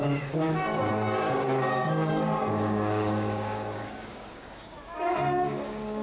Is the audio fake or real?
fake